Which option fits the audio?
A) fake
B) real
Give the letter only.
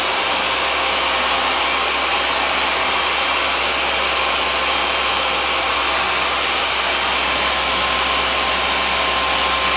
B